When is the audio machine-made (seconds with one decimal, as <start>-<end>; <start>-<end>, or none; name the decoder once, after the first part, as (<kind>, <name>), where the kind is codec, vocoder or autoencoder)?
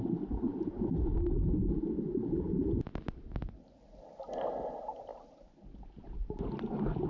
none